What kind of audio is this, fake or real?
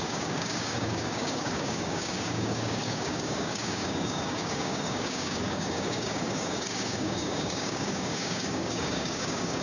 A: fake